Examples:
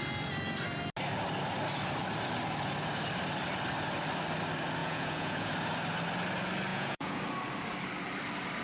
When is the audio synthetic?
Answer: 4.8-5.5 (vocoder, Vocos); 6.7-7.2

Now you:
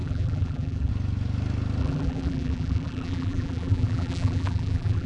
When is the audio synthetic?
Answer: 0.0-0.9 (vocoder, BigVGAN v2); 1.8-5.1

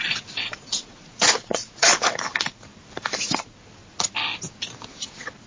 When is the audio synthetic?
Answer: 0.0-1.9 (vocoder, Vocos)

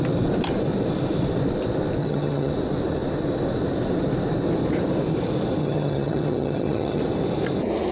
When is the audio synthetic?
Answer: 2.0-2.5 (vocoder, HiFi-GAN); 5.6-7.0

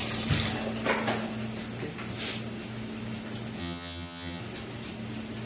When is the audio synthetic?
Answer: 3.6-4.4 (vocoder, HiFi-GAN)

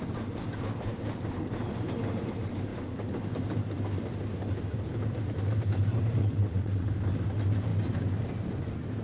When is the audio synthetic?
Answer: 6.2-6.9 (vocoder, WaveNeXt)

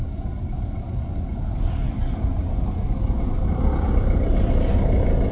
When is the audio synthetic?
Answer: none